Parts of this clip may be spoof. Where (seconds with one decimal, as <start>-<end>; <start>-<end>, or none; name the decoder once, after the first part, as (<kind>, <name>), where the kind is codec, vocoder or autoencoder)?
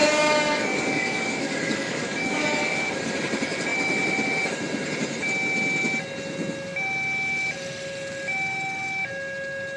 0.0-2.8 (codec, DAC)